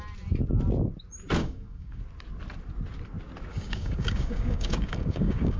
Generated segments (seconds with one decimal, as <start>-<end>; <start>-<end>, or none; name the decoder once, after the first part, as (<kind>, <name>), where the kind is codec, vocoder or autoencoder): 1.4-2.0 (codec, DAC); 3.5-5.6